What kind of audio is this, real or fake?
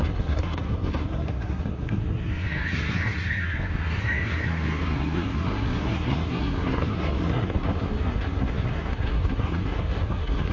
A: fake